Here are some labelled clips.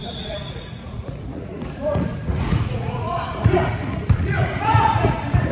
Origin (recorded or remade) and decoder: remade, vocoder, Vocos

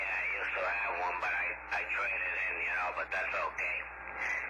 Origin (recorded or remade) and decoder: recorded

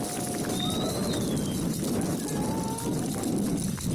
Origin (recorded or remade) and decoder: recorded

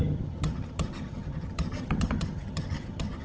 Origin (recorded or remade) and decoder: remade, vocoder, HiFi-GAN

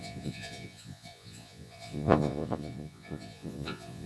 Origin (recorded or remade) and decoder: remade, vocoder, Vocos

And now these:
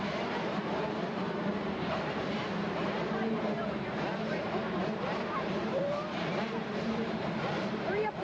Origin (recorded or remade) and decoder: remade, vocoder, BigVGAN v2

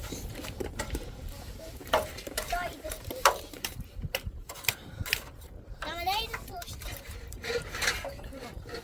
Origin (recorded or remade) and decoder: remade, vocoder, BigVGAN v2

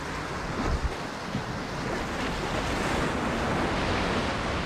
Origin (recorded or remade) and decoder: recorded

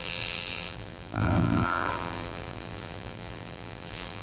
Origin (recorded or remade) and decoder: remade, vocoder, BigVGAN v2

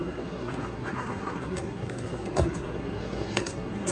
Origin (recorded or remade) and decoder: remade, codec, SNAC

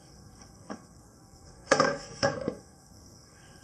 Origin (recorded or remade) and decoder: remade, codec, SNAC